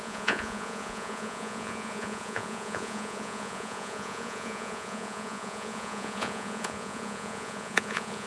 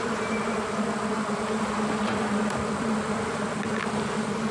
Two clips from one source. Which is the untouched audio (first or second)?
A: second